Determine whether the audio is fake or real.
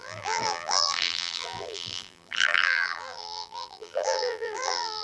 fake